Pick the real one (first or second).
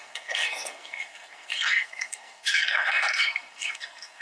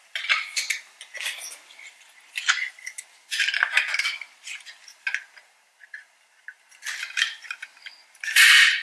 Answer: second